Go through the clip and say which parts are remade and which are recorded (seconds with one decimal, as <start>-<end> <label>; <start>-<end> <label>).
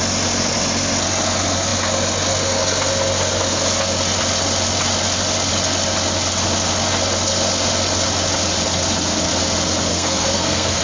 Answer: 0.0-9.9 recorded; 9.9-10.8 remade